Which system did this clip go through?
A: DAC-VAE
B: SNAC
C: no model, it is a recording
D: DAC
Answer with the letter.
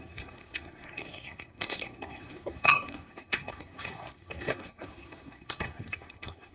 B